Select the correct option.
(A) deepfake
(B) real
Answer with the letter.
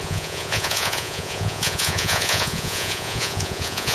A